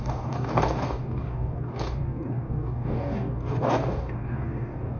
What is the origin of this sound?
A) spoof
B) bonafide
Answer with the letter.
A